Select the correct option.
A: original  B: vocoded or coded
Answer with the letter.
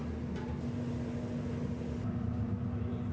A